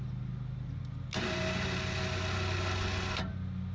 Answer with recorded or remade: recorded